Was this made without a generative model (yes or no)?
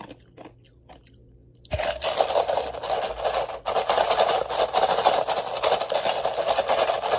yes